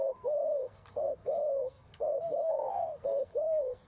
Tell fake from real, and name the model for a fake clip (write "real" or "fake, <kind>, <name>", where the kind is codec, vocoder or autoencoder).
fake, codec, SNAC